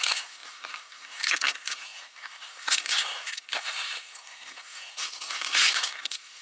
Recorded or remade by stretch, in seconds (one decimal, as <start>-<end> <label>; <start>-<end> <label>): 0.0-6.4 remade

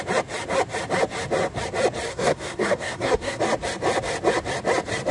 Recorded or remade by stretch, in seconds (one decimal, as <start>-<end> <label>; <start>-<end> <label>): 0.0-2.1 recorded; 2.1-3.4 remade; 3.4-5.1 recorded

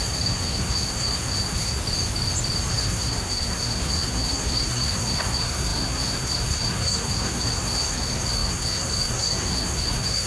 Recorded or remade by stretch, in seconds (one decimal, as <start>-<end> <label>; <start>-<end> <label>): 0.0-1.8 remade; 1.8-2.7 recorded; 2.7-10.3 remade